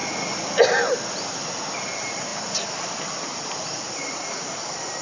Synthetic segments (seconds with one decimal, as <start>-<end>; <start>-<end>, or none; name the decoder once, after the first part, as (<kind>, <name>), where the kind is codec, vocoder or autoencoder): none